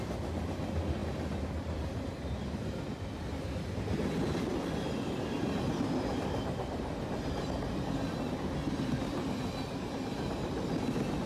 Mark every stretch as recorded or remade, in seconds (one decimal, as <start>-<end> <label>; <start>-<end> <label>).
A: 0.0-11.3 recorded